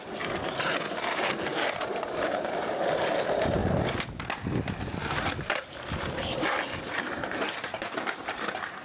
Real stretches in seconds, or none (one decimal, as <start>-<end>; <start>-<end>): 3.6-6.0